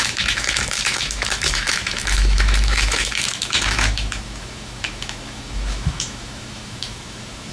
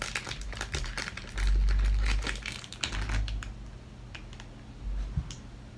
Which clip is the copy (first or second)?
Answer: first